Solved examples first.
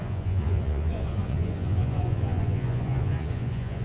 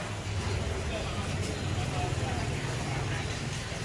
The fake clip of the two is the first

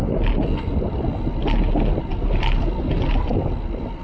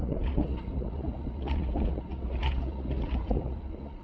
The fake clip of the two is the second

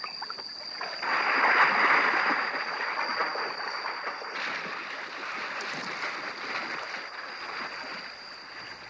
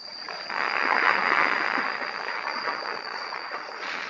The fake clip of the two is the second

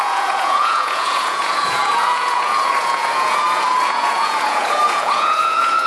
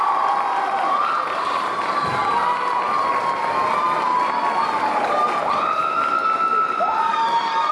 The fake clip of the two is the first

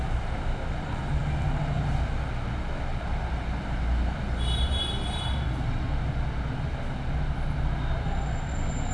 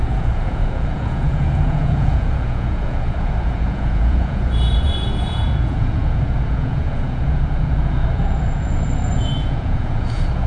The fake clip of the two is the second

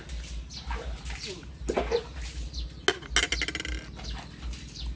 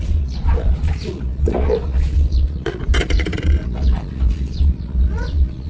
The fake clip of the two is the second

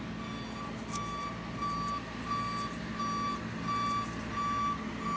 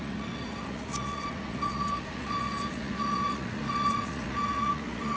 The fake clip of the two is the second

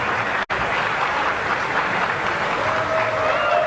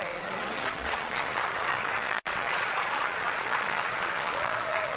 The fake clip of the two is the second